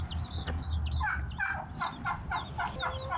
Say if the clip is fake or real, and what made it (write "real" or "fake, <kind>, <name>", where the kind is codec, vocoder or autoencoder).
real